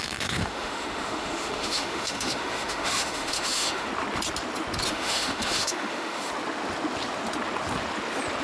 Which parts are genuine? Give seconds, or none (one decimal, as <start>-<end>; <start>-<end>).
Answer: 3.9-4.9; 6.3-8.4